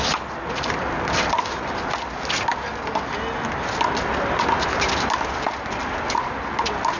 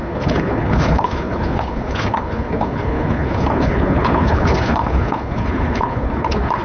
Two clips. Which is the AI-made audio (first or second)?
second